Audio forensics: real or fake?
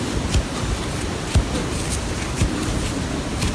real